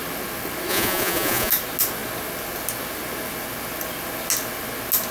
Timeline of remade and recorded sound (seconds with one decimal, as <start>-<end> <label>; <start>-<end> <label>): 0.0-0.7 recorded; 0.7-1.5 remade; 1.5-5.1 recorded